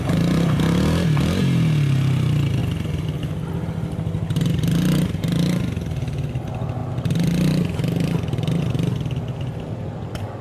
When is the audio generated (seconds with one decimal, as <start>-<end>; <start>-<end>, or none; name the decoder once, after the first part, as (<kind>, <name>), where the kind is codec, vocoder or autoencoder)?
none